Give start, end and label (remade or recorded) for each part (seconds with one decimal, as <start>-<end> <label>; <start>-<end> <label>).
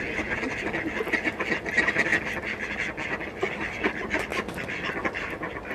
0.0-4.3 recorded; 4.3-5.1 remade; 5.1-5.7 recorded